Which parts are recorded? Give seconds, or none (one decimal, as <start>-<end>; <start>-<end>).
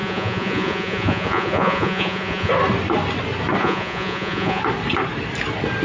2.5-3.6; 4.6-5.8